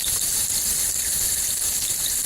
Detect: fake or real real